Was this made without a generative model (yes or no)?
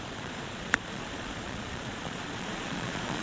no